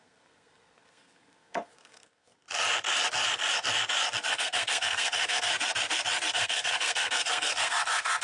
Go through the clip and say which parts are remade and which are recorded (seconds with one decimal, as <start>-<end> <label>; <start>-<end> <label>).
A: 0.0-2.3 remade; 2.3-4.3 recorded; 4.3-5.5 remade; 5.5-6.3 recorded; 6.3-8.2 remade